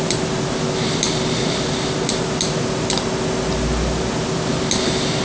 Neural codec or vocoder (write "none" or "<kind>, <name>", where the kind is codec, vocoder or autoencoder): none